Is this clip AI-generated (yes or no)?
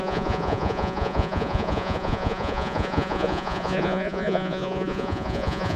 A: yes